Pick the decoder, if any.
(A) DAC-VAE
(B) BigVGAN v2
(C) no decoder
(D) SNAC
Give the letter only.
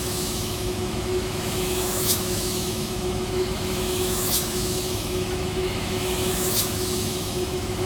A